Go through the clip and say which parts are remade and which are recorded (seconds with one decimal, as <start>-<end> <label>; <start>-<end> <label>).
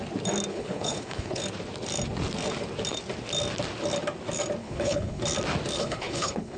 0.0-0.5 recorded; 0.5-1.4 remade; 1.4-4.6 recorded; 4.6-5.2 remade; 5.2-5.8 recorded; 5.8-6.6 remade